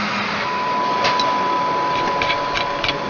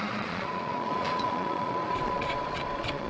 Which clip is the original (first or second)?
first